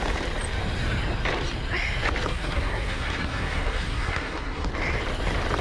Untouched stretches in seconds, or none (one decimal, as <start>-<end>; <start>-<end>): 0.0-2.3; 4.7-5.6

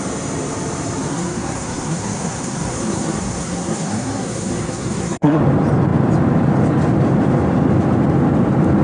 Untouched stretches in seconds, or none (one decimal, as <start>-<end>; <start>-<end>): 0.0-1.1; 5.4-8.8

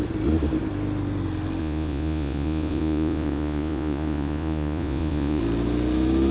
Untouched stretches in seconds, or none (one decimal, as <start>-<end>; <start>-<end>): 0.0-1.6; 5.4-6.3

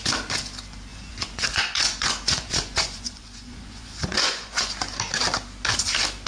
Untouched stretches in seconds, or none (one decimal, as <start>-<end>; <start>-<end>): 0.0-0.9; 4.7-6.3

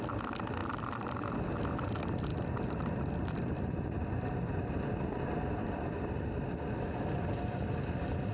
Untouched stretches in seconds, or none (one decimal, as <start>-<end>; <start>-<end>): 0.0-8.3